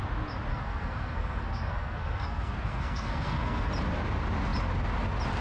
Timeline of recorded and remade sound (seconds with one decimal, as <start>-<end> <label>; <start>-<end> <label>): 0.0-0.5 recorded; 0.5-3.7 remade; 3.7-5.4 recorded